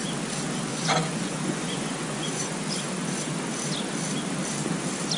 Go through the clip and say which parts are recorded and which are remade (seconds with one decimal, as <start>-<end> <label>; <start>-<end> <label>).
0.0-0.7 recorded; 0.7-2.6 remade; 2.6-5.2 recorded